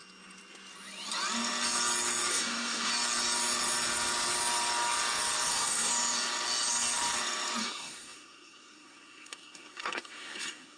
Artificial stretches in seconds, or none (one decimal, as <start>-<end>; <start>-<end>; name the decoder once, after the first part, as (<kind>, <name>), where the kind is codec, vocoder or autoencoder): 2.3-2.9 (codec, SNAC); 5.5-5.9; 7.6-10.8